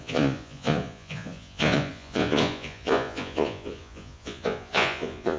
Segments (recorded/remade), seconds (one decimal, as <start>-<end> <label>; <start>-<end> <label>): 0.0-5.4 remade